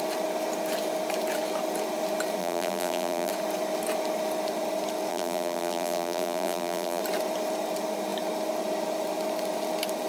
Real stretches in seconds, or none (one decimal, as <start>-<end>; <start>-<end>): 0.0-2.4; 3.3-5.1; 7.0-10.1